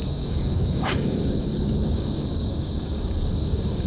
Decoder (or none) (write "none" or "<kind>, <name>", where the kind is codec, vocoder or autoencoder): codec, DAC